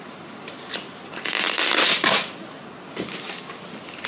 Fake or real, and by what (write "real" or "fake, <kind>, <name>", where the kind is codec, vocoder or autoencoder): real